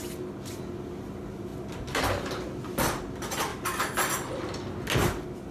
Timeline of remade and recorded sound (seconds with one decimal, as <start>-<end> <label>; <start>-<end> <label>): 0.0-5.5 recorded